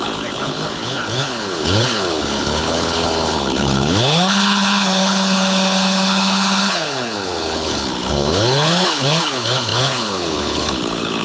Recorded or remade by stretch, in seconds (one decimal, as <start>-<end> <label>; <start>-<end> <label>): 0.0-11.2 remade